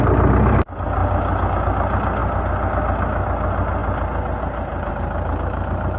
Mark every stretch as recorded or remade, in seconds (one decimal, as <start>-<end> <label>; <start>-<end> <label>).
0.0-6.0 recorded

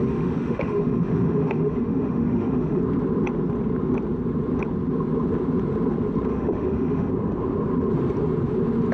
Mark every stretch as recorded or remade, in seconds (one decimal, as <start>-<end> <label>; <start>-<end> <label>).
0.0-2.8 remade; 2.8-6.3 recorded; 6.3-7.1 remade; 7.1-8.9 recorded

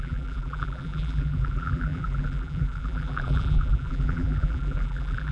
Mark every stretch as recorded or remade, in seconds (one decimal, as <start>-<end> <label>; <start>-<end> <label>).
0.0-5.3 remade

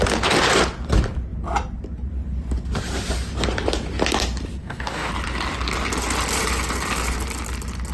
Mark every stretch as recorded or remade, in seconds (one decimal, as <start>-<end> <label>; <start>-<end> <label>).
0.0-4.6 recorded; 4.6-5.1 remade; 5.1-7.9 recorded

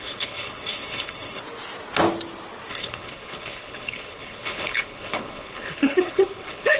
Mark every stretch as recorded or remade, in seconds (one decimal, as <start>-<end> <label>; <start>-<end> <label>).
0.0-1.4 remade; 1.4-2.7 recorded; 2.7-6.8 remade

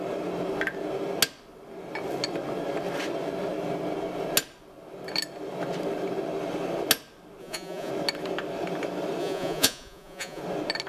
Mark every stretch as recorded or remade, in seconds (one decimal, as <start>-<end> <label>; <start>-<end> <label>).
0.0-7.4 recorded; 7.4-7.9 remade; 7.9-9.2 recorded; 9.2-10.4 remade; 10.4-10.9 recorded